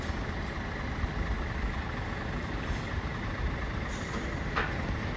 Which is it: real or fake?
real